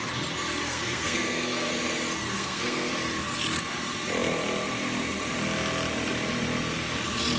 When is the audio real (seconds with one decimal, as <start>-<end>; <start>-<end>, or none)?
0.0-0.6; 1.7-2.2; 2.9-7.4